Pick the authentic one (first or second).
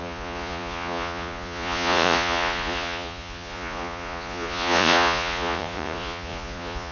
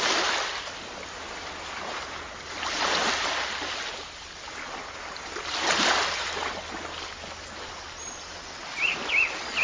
second